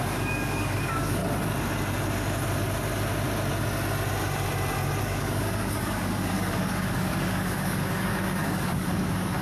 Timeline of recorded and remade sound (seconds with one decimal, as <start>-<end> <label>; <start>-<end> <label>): 0.0-1.2 remade; 1.2-5.0 recorded; 5.0-9.4 remade